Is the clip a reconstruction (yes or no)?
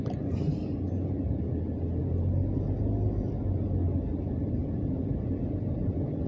no